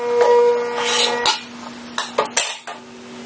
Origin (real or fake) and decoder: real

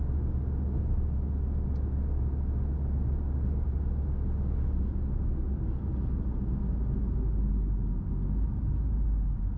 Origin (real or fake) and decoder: real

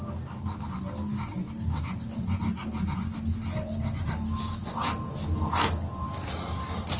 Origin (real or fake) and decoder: real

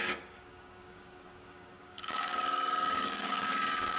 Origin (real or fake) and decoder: fake, codec, DAC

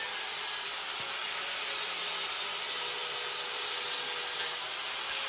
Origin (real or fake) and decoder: real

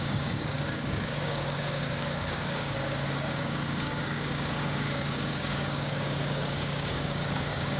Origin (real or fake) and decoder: fake, codec, DAC